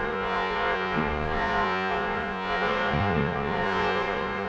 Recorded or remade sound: remade